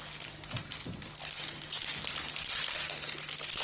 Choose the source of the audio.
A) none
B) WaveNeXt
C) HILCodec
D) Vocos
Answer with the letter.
A